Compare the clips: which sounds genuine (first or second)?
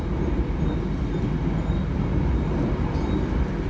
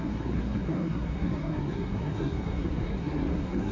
first